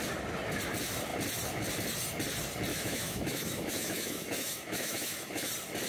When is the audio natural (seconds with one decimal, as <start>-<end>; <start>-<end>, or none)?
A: 0.0-2.7; 5.5-5.9

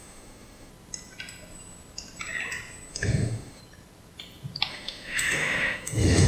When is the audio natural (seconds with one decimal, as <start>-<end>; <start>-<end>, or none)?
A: 0.7-2.9; 3.6-4.7

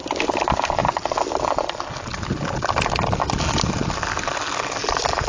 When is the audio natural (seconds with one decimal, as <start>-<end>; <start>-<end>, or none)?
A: 0.0-5.3

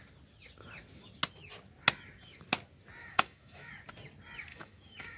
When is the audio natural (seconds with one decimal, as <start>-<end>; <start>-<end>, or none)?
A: 0.0-3.0; 3.7-4.5

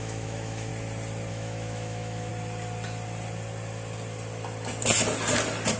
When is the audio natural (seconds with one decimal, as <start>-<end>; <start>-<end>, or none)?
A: 0.7-1.3; 2.3-5.8